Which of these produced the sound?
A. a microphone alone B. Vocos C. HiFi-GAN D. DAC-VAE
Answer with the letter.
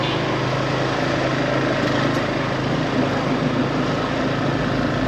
A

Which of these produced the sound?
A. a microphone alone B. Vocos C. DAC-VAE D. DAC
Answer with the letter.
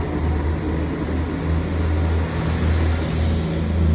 A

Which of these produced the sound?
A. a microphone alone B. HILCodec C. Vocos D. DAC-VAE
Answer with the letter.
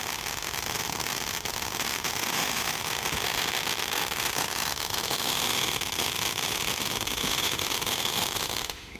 D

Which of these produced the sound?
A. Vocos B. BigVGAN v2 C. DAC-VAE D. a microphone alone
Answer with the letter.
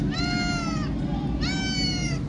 D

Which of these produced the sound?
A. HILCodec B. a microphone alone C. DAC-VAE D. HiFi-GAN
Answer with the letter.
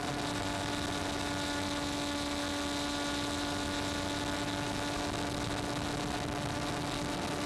B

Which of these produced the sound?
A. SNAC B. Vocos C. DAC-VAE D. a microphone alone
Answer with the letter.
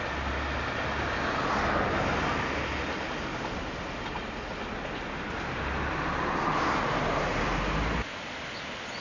D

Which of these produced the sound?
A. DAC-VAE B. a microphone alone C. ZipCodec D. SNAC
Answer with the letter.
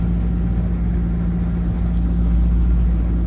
B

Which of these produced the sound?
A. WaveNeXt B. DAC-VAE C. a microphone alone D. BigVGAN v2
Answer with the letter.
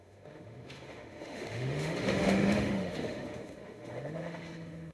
B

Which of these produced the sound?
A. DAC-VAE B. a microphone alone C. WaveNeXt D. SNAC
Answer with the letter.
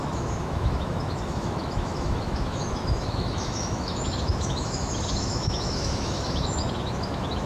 A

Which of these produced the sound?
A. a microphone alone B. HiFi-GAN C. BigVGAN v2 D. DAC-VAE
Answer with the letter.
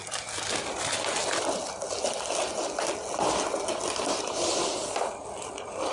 A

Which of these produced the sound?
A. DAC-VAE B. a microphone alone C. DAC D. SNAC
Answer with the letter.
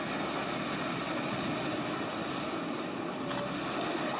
B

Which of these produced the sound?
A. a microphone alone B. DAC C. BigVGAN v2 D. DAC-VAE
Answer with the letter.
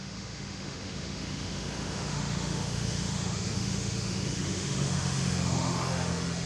D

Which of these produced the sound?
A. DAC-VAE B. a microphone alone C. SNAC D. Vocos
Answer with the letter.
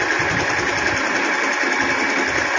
B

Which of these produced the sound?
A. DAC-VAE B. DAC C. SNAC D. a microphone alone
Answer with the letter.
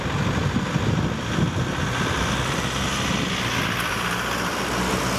D